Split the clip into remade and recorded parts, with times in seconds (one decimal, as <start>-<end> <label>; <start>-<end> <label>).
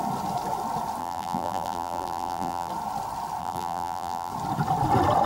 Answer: 0.0-1.0 recorded; 1.0-2.7 remade; 2.7-3.4 recorded; 3.4-4.3 remade; 4.3-5.3 recorded